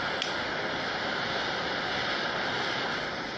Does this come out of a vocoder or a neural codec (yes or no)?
no